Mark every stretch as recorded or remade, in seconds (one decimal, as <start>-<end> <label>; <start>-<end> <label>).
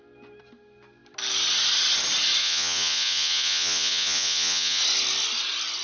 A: 0.0-2.4 recorded; 2.4-4.8 remade; 4.8-5.8 recorded